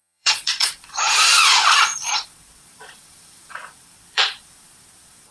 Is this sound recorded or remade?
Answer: remade